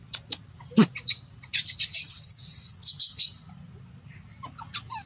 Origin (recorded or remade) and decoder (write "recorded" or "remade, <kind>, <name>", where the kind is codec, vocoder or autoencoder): recorded